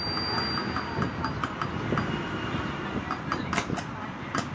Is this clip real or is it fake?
real